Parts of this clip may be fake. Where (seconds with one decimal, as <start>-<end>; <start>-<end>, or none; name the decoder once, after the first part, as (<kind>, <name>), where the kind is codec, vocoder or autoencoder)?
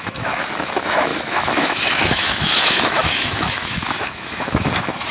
0.0-5.1 (autoencoder, DAC-VAE)